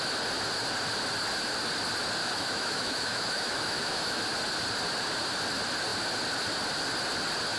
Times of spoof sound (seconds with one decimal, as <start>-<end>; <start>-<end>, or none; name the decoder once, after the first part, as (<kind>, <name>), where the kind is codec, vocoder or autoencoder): 2.2-4.2 (autoencoder, DAC-VAE)